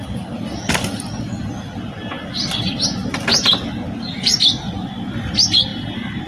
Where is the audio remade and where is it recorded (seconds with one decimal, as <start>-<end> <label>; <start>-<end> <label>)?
0.0-6.3 recorded